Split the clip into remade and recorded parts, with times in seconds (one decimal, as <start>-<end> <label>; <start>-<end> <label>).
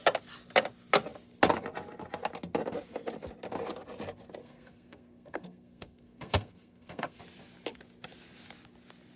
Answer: 0.0-4.4 recorded; 4.4-7.2 remade; 7.2-9.2 recorded